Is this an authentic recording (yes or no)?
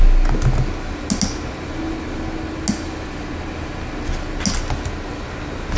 yes